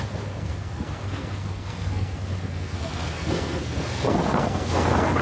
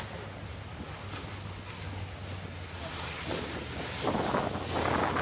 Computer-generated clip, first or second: first